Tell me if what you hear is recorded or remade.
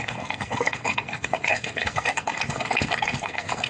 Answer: remade